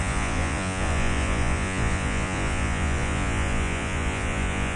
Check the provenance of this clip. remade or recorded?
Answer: remade